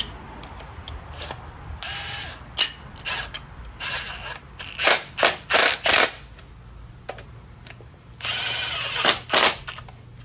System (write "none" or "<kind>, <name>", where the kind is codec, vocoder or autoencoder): none